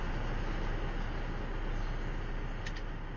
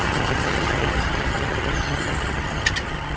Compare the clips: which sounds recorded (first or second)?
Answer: first